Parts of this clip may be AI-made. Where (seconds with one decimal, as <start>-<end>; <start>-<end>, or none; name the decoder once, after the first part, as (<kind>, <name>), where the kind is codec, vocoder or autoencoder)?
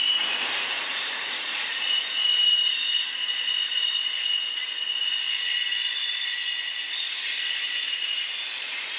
0.6-2.3 (vocoder, Vocos); 3.3-9.0